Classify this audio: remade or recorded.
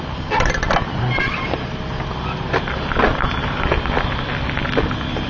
recorded